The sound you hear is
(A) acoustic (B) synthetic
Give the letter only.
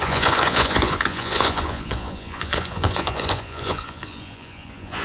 B